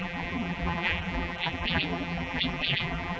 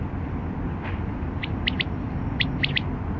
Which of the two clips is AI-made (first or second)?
first